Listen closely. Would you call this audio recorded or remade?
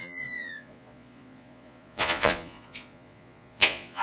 remade